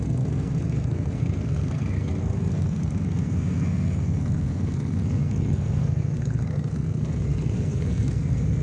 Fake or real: fake